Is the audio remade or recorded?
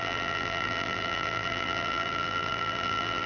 remade